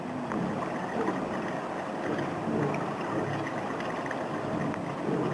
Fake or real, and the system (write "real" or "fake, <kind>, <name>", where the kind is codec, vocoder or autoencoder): real